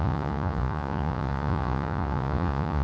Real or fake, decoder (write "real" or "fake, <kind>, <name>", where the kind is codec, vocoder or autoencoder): fake, vocoder, Vocos